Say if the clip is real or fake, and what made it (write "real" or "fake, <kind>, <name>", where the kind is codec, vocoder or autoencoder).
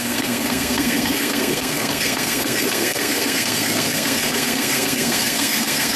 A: fake, codec, SNAC